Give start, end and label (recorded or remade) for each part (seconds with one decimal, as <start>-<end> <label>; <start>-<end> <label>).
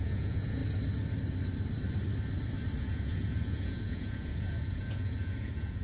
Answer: 0.0-0.6 remade; 0.6-2.8 recorded; 2.8-5.8 remade